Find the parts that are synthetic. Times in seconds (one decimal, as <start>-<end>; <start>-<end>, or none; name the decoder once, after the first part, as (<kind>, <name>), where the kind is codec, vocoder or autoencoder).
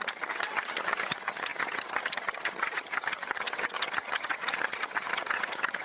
0.0-5.8 (vocoder, HiFi-GAN)